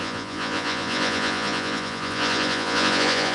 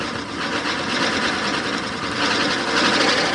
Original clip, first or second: second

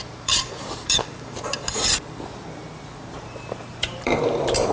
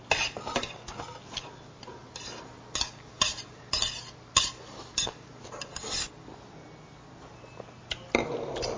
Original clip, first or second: second